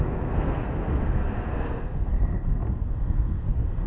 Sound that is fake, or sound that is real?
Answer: fake